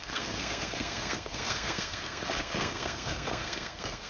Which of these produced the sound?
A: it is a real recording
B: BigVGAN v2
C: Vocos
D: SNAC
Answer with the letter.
D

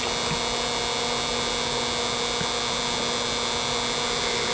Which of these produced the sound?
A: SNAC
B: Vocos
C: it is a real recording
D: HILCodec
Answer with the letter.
C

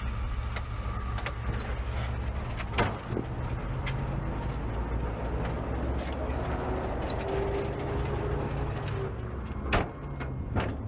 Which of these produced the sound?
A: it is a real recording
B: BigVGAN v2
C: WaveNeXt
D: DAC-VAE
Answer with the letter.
A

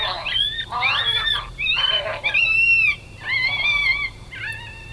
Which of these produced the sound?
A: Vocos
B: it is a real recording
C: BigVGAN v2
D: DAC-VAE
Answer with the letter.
B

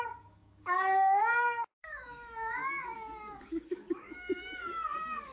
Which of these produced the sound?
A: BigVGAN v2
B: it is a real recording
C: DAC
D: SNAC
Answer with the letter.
C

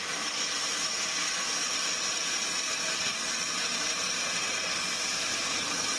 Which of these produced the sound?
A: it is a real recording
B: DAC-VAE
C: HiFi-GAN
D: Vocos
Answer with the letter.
A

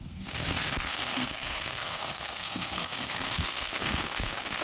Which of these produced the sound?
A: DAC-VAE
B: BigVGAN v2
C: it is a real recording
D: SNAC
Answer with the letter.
D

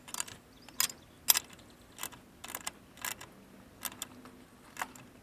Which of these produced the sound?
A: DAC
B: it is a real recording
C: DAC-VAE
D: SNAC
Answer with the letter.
B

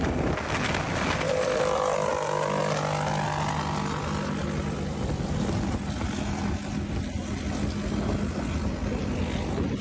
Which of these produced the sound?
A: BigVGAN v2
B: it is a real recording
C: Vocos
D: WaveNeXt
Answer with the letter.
B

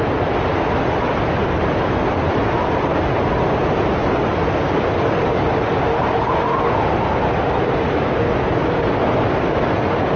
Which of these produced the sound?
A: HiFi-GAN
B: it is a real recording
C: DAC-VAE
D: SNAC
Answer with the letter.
B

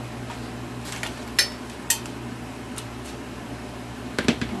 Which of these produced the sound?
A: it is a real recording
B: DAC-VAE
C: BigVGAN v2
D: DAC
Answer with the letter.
A